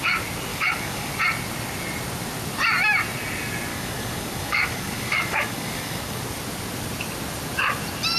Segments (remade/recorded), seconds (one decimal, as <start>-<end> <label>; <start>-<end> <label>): 0.0-0.5 recorded; 0.5-1.1 remade; 1.1-3.7 recorded; 3.7-6.2 remade; 6.2-8.2 recorded